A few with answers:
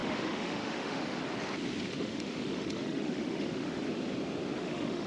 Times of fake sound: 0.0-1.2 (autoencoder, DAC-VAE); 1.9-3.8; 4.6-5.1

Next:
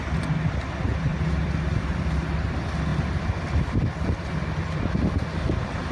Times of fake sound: 1.1-2.3 (vocoder, BigVGAN v2)